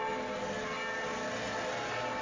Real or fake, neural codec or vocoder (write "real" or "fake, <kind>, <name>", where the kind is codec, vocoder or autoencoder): real